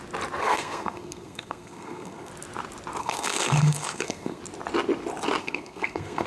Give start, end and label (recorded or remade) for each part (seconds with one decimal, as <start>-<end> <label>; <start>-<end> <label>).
0.0-0.4 recorded; 0.4-2.3 remade; 2.3-3.0 recorded; 3.0-4.4 remade; 4.4-5.4 recorded; 5.4-6.3 remade